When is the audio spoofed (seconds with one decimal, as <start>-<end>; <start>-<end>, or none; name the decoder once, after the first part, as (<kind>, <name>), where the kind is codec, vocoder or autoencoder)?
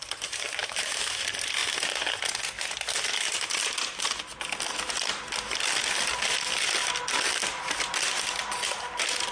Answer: 0.6-1.2 (autoencoder, DAC-VAE)